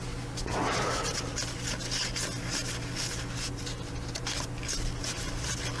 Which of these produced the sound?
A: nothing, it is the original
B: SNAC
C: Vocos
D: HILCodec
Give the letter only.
A